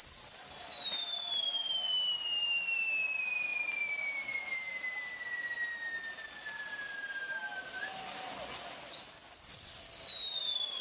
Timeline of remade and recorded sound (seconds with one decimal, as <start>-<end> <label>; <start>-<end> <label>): 0.0-10.8 recorded